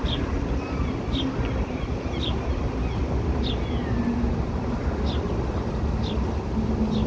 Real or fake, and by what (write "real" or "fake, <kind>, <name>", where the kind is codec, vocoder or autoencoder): real